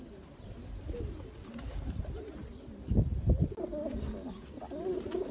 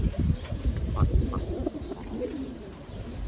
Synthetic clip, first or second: second